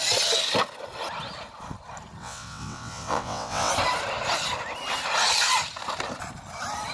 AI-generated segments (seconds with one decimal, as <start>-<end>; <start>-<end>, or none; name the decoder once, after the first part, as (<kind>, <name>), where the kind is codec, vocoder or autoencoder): 2.2-3.7 (vocoder, WaveNeXt)